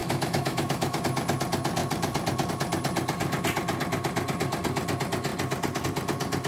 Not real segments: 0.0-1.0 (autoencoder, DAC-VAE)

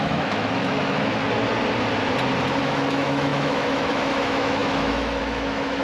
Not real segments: 0.0-1.2 (autoencoder, DAC-VAE); 2.6-5.8

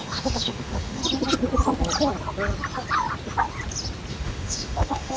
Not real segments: 0.0-1.0 (autoencoder, DAC-VAE); 4.1-5.2

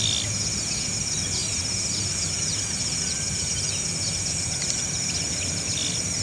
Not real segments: none

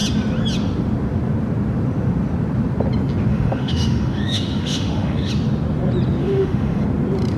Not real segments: 3.3-5.3 (autoencoder, DAC-VAE); 6.2-6.8

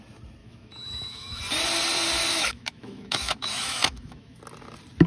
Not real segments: 0.4-1.4 (autoencoder, DAC-VAE); 2.3-4.4

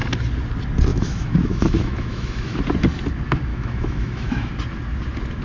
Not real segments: 0.9-2.6 (autoencoder, DAC-VAE); 3.5-4.5